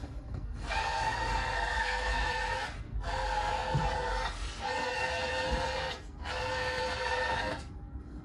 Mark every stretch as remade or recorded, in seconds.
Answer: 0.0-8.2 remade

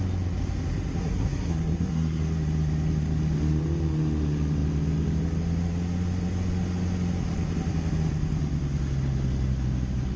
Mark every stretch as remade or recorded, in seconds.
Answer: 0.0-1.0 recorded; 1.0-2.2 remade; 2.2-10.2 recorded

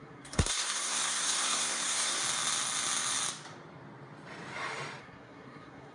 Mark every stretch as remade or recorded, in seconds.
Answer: 0.0-2.2 remade; 2.2-5.0 recorded; 5.0-5.9 remade

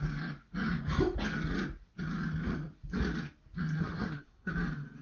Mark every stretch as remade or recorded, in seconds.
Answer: 0.0-3.8 recorded; 3.8-4.5 remade; 4.5-5.0 recorded